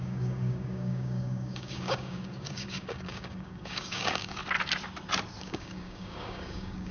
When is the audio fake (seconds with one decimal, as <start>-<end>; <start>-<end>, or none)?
0.0-4.4; 5.4-6.9